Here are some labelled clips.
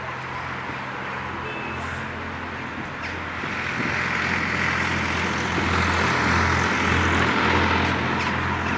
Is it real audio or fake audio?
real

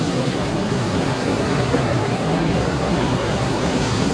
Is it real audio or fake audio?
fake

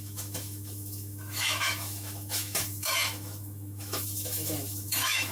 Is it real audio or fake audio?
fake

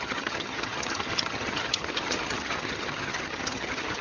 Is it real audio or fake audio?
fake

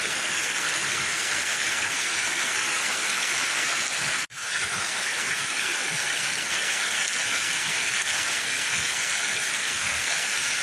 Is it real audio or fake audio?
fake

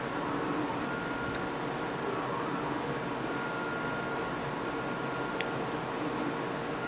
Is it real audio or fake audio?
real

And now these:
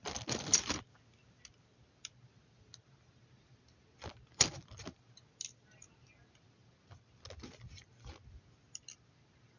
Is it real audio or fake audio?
real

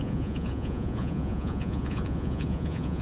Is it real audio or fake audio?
fake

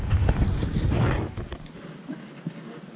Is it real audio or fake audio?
real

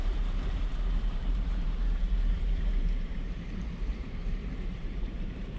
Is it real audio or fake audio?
fake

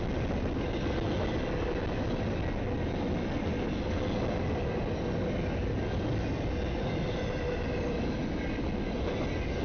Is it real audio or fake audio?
real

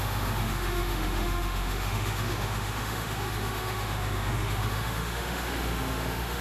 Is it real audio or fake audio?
fake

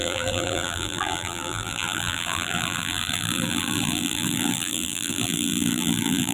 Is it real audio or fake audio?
fake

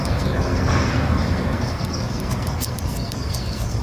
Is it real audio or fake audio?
fake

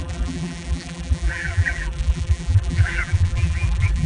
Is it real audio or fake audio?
fake